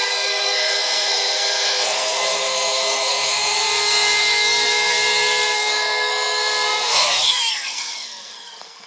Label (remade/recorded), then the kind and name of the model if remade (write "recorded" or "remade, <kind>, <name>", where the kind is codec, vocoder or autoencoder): remade, codec, SNAC